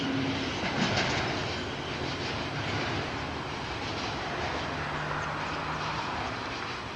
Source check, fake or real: real